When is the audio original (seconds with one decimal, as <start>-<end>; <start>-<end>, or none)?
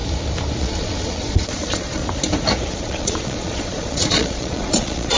0.0-0.6; 2.0-2.7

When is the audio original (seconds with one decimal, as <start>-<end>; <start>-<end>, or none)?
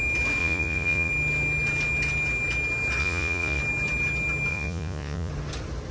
0.0-0.4; 1.1-3.0; 3.6-4.5; 5.3-5.9